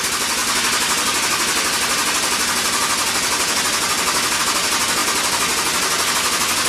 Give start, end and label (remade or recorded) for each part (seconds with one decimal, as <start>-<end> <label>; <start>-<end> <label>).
0.0-6.7 recorded